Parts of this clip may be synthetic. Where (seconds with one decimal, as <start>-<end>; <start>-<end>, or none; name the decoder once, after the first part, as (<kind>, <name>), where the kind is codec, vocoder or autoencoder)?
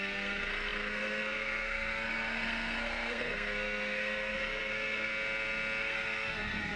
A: 0.0-5.1 (codec, SNAC); 5.8-6.8